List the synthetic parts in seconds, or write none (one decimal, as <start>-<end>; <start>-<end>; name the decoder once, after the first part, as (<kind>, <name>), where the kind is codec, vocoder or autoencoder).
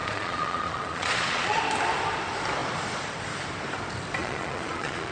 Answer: 0.0-1.6 (vocoder, Vocos); 4.2-5.1